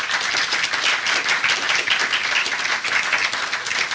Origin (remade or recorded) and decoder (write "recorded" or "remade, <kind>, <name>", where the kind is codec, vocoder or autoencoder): recorded